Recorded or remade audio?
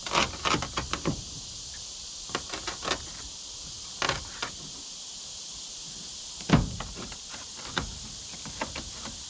recorded